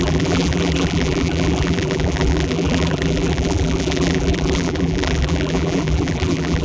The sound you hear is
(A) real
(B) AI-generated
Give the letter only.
B